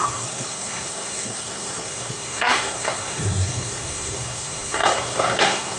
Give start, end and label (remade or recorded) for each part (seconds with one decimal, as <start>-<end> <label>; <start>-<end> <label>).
0.0-5.8 remade